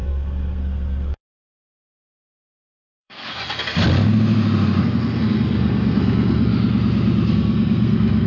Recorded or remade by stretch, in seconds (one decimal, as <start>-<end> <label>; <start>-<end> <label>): 0.0-3.4 remade; 3.4-4.8 recorded; 4.8-6.5 remade; 6.5-7.3 recorded; 7.3-8.3 remade